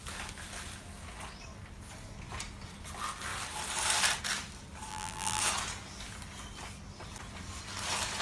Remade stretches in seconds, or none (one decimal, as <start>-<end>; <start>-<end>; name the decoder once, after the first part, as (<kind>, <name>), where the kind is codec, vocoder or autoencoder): 4.9-5.4 (vocoder, BigVGAN v2)